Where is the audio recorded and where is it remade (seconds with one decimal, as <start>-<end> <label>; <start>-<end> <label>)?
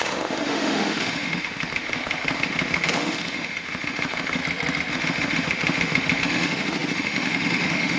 0.0-4.4 remade; 4.4-4.9 recorded; 4.9-8.0 remade